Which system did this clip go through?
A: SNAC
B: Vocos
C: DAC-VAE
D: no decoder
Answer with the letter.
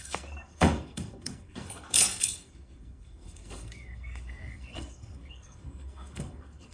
A